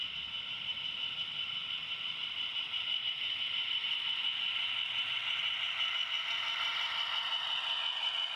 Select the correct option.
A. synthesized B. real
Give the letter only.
B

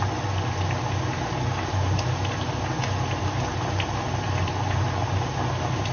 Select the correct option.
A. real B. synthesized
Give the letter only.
A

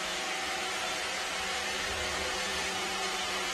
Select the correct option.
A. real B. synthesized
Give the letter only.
B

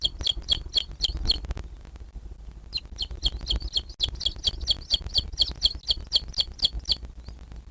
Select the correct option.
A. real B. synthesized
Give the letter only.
A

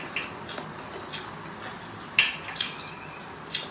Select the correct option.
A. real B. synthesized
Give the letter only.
A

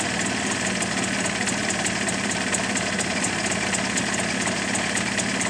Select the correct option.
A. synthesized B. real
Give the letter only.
B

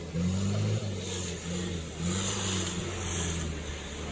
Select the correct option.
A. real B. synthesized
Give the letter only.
A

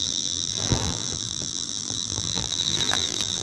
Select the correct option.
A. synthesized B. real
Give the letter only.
A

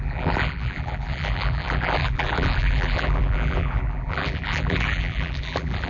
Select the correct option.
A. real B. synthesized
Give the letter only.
B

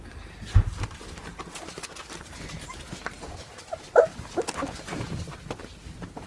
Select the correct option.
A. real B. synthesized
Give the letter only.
B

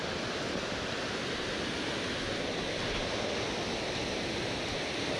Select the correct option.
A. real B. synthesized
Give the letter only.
A